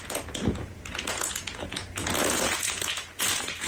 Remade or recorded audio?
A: remade